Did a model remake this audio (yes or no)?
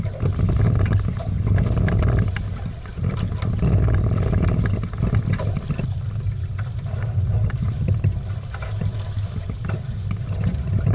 no